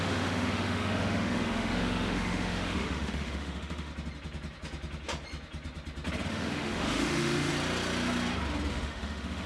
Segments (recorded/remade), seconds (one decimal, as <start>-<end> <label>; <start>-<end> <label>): 0.0-3.9 remade; 3.9-6.3 recorded; 6.3-7.5 remade; 7.5-8.7 recorded; 8.7-9.5 remade